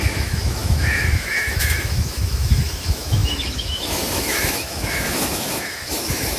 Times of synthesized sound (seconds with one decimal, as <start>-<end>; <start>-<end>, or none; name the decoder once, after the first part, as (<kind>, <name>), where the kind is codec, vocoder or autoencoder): 0.0-6.4 (autoencoder, DAC-VAE)